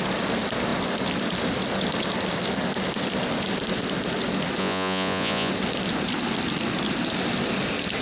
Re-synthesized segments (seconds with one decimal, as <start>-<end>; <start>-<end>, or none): 4.6-5.5